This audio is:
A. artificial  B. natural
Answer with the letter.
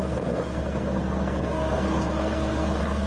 A